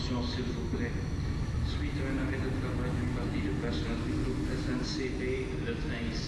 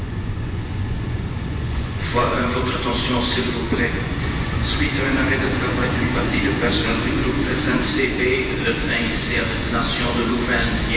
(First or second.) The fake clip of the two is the second